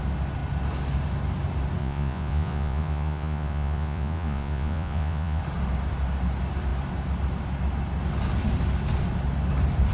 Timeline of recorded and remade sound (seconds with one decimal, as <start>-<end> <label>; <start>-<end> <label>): 0.0-1.8 recorded; 1.8-5.4 remade; 5.4-9.9 recorded